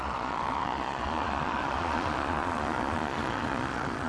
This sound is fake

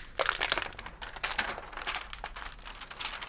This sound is real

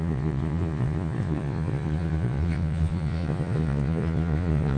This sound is fake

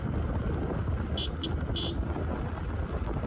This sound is real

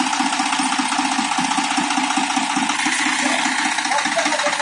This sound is real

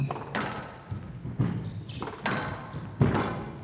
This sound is real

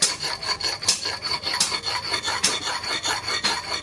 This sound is fake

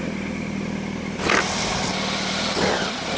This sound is real